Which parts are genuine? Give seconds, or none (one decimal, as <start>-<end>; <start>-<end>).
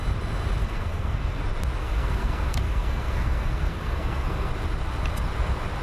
0.0-0.6; 1.4-1.8; 4.5-5.8